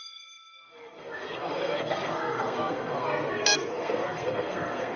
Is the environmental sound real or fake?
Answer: fake